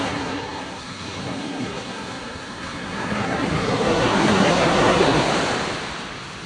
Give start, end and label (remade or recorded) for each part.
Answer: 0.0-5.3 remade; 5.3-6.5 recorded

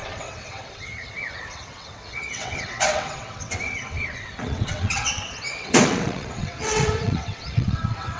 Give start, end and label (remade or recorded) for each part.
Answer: 0.0-8.2 remade

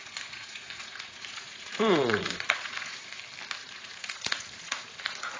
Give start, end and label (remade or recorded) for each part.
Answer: 0.0-3.2 remade; 3.2-3.6 recorded; 3.6-5.4 remade

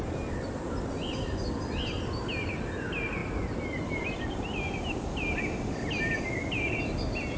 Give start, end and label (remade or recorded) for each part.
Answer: 0.0-7.4 recorded

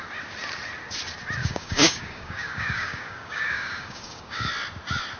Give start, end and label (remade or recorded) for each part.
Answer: 0.0-1.4 recorded; 1.4-4.5 remade; 4.5-5.2 recorded

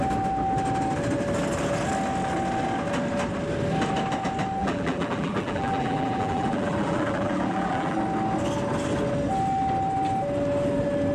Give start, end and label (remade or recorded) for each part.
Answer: 0.0-4.6 recorded; 4.6-8.0 remade; 8.0-11.1 recorded

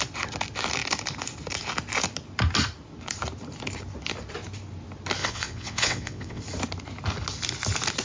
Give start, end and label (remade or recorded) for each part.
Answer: 0.0-5.2 recorded; 5.2-6.4 remade; 6.4-8.0 recorded